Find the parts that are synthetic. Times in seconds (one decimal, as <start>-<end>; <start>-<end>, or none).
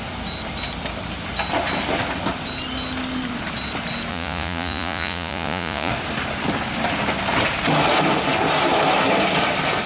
4.1-5.9